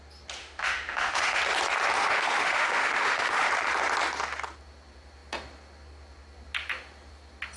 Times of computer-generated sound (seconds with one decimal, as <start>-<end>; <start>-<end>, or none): 0.4-1.4; 2.0-3.5